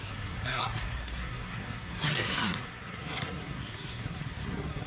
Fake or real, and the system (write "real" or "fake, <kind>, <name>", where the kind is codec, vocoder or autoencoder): fake, codec, SNAC